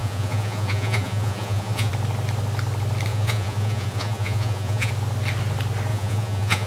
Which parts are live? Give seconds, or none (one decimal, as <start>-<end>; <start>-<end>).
1.9-3.1; 4.9-5.9